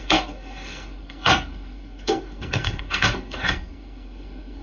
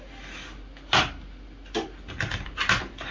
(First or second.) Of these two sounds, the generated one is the first